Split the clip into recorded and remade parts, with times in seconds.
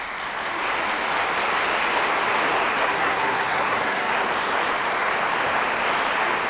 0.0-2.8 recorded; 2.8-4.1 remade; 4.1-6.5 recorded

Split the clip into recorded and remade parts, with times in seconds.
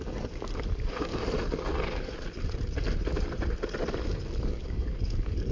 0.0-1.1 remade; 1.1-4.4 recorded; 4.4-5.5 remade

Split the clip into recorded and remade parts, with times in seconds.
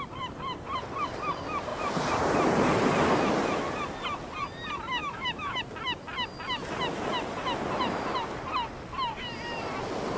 0.0-5.0 recorded; 5.0-5.6 remade; 5.6-10.2 recorded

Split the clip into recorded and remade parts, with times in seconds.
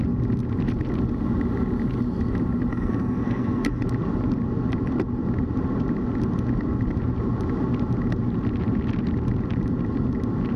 0.0-2.7 recorded; 2.7-3.8 remade; 3.8-10.6 recorded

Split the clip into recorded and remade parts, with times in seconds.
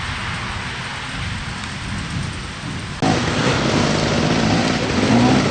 0.0-5.5 recorded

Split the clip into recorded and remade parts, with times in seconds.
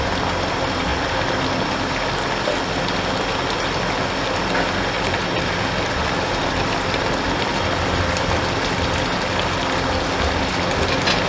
0.0-11.3 recorded